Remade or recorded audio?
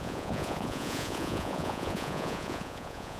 remade